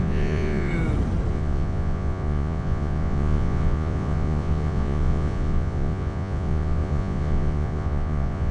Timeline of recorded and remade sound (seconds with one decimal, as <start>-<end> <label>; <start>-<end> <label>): 0.0-0.7 remade; 0.7-1.3 recorded; 1.3-8.5 remade

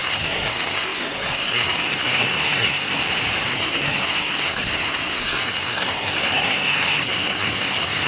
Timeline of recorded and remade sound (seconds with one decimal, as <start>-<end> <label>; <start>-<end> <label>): 0.0-3.0 remade; 3.0-3.5 recorded; 3.5-8.1 remade